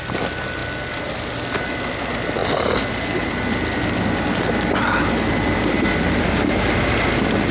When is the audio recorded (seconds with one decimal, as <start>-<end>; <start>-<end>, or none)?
0.0-7.5

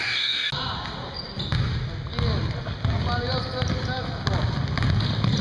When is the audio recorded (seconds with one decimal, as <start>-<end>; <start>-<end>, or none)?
0.5-5.4

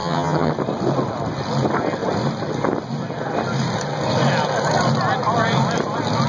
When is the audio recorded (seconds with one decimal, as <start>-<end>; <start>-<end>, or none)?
0.5-6.3